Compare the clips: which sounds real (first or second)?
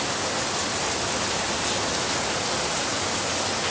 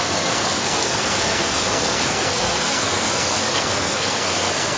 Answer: first